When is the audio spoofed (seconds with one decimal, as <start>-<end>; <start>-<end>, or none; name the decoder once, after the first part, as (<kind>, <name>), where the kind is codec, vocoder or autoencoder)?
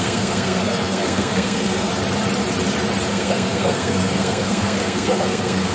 0.0-1.9 (codec, SNAC); 3.1-5.7